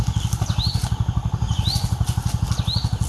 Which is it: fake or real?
real